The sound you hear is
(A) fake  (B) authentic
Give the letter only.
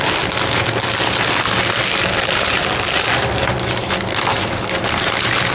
B